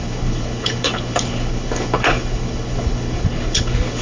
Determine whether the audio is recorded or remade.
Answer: remade